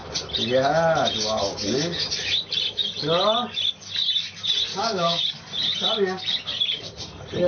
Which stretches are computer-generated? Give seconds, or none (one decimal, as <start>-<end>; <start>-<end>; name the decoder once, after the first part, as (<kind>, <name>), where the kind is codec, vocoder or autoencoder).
4.7-5.2 (codec, DAC)